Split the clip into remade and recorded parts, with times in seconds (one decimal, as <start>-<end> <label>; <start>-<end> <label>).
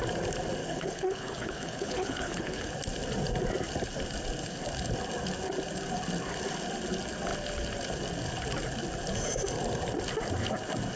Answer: 0.0-0.6 recorded; 0.6-2.7 remade; 2.7-11.0 recorded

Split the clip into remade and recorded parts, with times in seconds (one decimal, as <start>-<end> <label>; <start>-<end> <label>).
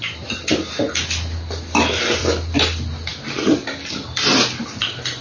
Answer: 0.0-5.2 recorded